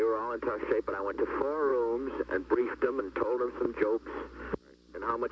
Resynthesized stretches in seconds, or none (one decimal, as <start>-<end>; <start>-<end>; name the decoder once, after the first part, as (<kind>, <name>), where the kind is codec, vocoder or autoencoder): 1.7-3.0 (autoencoder, DAC-VAE)